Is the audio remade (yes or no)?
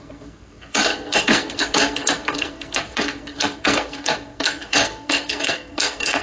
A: yes